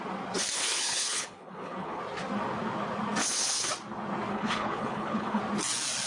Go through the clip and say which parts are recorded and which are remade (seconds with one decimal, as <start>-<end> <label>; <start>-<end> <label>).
0.0-0.6 recorded; 0.6-2.0 remade; 2.0-3.2 recorded; 3.2-3.7 remade; 3.7-4.3 recorded; 4.3-5.4 remade; 5.4-6.1 recorded